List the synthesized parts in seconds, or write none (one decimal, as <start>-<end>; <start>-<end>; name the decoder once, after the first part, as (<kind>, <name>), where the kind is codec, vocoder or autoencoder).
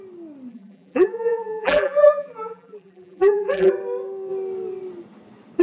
0.5-3.7 (vocoder, BigVGAN v2)